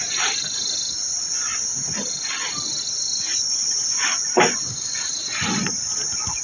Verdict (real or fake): real